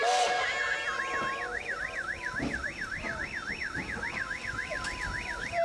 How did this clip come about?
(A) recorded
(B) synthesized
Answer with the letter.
A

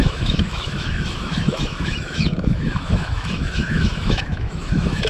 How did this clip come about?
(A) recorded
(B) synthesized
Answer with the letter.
B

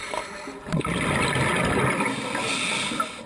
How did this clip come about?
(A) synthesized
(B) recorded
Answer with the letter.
B